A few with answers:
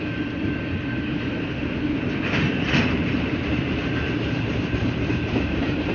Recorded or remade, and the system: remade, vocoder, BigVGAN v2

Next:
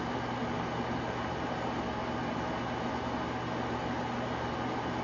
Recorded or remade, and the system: recorded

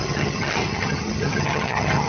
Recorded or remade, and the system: remade, vocoder, HiFi-GAN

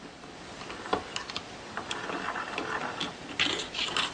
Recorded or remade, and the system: remade, vocoder, BigVGAN v2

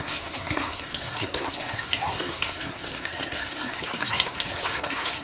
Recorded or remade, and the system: remade, codec, SNAC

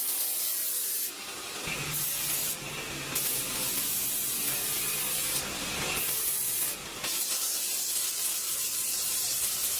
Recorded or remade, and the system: recorded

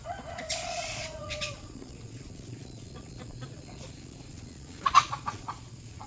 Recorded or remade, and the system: remade, vocoder, Vocos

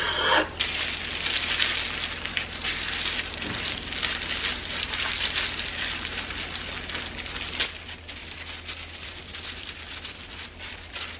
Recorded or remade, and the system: recorded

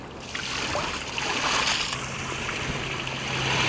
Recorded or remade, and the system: recorded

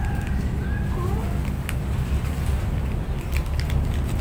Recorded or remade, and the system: recorded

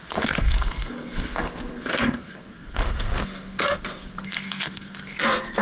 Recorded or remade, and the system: remade, codec, SNAC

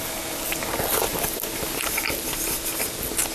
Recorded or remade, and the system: recorded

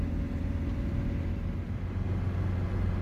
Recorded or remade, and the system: recorded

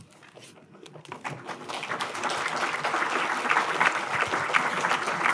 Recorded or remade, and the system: recorded